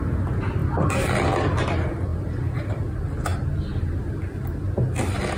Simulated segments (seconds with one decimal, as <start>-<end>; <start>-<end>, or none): none